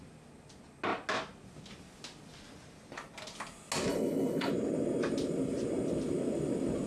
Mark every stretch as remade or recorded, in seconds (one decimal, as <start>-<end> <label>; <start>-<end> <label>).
0.0-3.9 recorded; 3.9-4.5 remade; 4.5-6.9 recorded